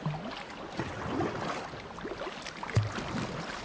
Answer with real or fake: real